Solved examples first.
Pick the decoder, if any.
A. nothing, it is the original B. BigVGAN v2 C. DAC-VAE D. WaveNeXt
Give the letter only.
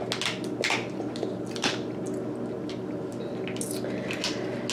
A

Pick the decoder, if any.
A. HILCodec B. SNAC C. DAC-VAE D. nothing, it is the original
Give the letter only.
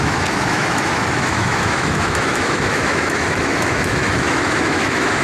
C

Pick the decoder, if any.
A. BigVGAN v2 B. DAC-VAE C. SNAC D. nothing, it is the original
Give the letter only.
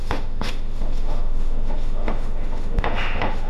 B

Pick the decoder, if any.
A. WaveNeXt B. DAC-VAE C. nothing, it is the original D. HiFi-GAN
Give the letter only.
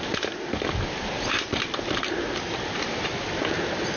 C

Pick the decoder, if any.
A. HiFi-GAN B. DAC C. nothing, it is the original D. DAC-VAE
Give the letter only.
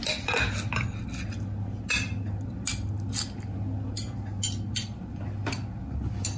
C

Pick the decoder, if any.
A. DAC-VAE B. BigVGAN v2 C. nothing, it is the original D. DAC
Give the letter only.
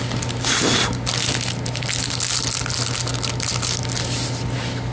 C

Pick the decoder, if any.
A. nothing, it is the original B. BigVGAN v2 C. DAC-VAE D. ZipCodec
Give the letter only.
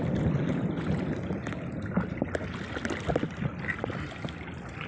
A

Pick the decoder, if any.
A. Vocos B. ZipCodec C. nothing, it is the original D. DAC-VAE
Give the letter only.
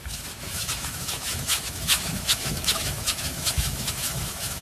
D